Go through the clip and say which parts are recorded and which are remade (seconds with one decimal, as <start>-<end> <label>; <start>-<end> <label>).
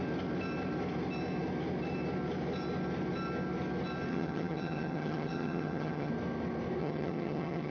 0.0-4.1 recorded; 4.1-6.1 remade; 6.1-6.8 recorded; 6.8-7.7 remade